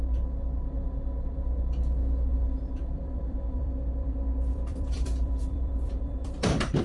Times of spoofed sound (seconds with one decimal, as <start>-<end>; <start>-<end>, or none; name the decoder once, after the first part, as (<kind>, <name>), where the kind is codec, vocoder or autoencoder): 2.3-6.8 (vocoder, BigVGAN v2)